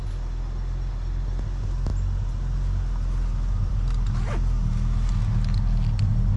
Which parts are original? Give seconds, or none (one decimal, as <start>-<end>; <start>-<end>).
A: 0.0-6.4